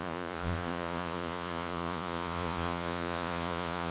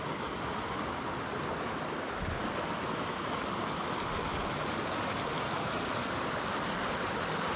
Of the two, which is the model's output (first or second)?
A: first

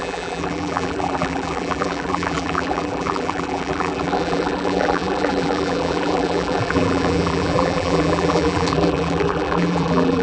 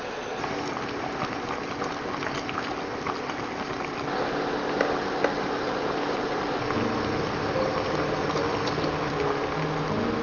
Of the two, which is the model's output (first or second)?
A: first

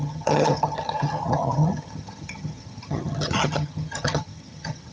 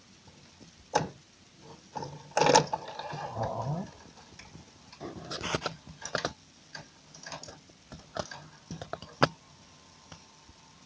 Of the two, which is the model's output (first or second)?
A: first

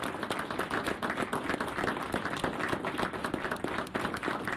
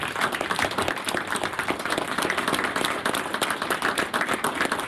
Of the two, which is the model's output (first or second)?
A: second